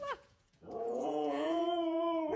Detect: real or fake fake